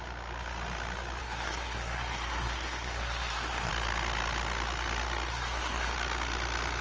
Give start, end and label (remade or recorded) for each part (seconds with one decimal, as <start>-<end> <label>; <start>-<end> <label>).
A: 0.0-1.2 recorded; 1.2-3.7 remade; 3.7-5.3 recorded; 5.3-5.9 remade; 5.9-6.8 recorded